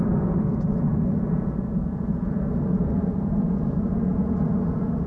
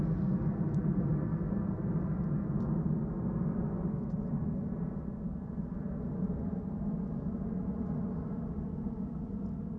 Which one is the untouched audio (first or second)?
second